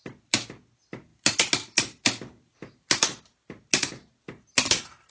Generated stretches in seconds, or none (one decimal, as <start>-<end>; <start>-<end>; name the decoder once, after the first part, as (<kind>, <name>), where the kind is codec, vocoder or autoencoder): none